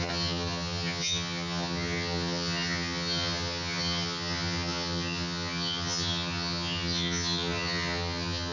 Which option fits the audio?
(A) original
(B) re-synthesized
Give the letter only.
B